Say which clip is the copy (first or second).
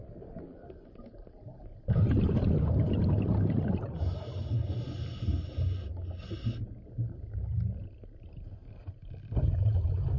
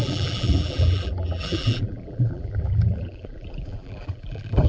second